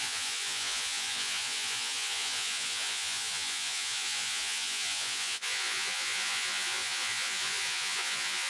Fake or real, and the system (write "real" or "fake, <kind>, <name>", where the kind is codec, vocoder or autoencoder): fake, vocoder, Vocos